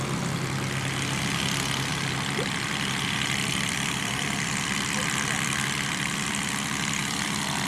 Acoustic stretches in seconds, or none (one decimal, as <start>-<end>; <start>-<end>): 0.0-1.9; 6.5-7.0